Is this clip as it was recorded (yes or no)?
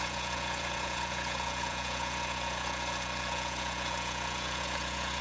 no